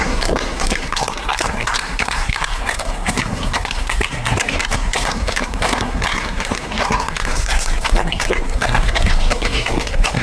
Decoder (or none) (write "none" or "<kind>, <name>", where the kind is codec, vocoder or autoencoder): codec, SNAC